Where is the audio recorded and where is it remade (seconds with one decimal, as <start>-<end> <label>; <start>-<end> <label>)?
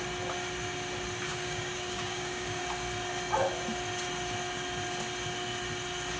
0.0-1.3 recorded; 1.3-2.6 remade; 2.6-6.2 recorded